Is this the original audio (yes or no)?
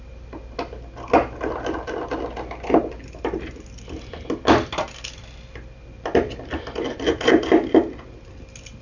yes